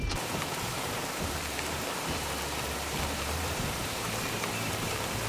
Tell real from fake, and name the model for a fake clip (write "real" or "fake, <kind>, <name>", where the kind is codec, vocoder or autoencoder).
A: fake, vocoder, BigVGAN v2